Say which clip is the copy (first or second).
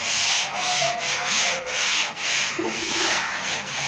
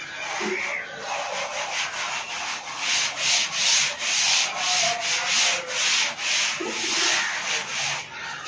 first